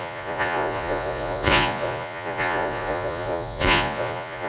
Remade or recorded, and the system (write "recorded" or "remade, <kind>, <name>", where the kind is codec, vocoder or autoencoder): remade, vocoder, Vocos